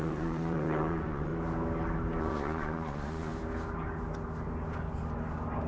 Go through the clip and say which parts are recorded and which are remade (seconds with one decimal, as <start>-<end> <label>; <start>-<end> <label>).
0.0-1.3 remade; 1.3-2.2 recorded; 2.2-3.3 remade; 3.3-5.7 recorded